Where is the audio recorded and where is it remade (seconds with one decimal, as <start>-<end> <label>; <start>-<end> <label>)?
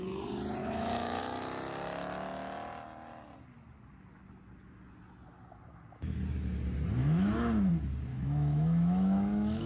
0.0-0.6 recorded; 0.6-1.2 remade; 1.2-7.0 recorded; 7.0-7.7 remade; 7.7-8.1 recorded; 8.1-9.7 remade